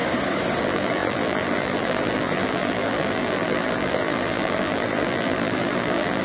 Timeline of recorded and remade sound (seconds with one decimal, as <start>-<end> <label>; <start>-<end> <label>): 0.0-0.6 recorded; 0.6-6.2 remade